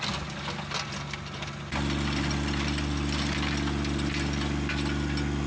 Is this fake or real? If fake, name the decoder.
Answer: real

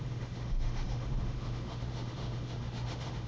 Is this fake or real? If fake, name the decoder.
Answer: fake, autoencoder, DAC-VAE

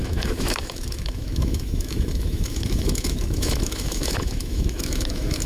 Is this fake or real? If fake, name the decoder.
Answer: fake, autoencoder, DAC-VAE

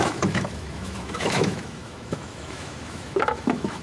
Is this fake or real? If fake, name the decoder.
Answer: fake, autoencoder, DAC-VAE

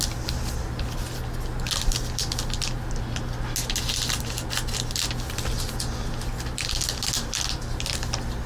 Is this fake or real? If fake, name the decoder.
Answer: real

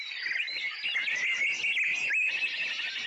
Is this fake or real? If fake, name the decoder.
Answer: real